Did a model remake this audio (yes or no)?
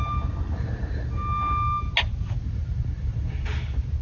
no